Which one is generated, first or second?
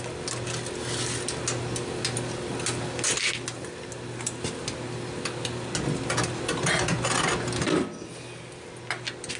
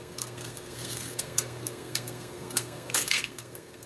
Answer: second